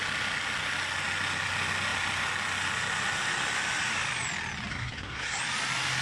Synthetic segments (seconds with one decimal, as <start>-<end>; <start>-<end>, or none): 4.7-5.4